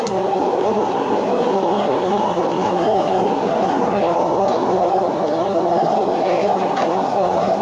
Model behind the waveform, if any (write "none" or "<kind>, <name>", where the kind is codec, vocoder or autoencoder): codec, SNAC